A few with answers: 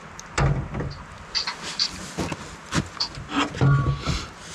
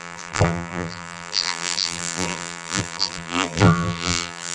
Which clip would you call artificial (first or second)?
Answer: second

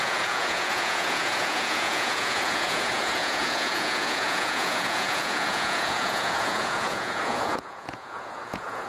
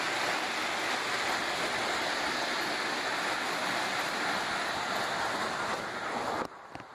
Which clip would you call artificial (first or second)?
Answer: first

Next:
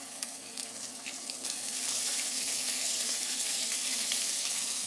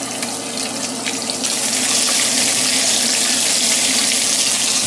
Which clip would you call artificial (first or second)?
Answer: first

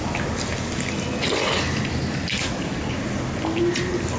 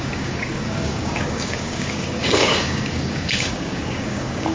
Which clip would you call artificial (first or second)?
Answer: second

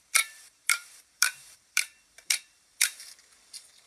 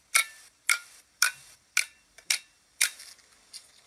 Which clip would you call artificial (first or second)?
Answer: first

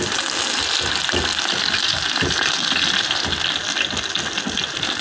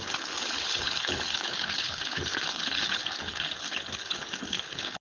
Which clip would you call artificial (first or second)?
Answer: second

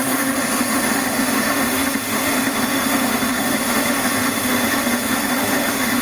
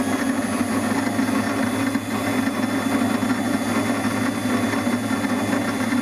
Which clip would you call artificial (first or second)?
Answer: first